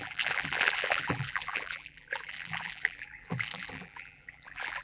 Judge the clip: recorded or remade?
remade